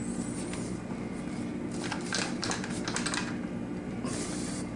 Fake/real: real